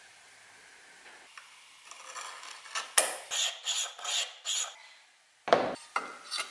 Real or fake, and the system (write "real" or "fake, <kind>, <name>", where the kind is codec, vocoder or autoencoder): real